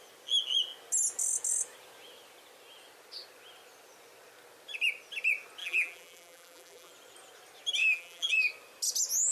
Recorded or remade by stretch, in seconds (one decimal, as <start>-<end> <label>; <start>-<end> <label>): 0.0-5.6 recorded; 5.6-6.9 remade; 6.9-7.8 recorded; 7.8-8.3 remade; 8.3-9.3 recorded